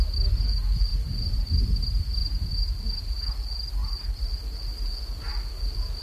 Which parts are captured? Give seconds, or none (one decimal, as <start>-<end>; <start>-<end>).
0.0-0.9; 1.6-2.2; 3.0-3.8; 4.4-6.0